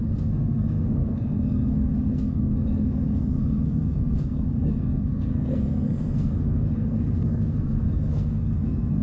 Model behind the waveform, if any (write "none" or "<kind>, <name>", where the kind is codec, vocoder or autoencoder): codec, SNAC